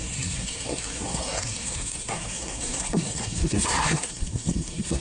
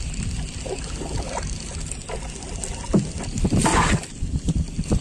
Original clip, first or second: second